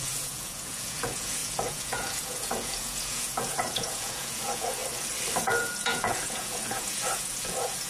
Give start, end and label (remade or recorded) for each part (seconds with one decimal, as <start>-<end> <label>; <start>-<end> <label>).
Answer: 0.0-4.8 remade; 4.8-5.4 recorded; 5.4-7.9 remade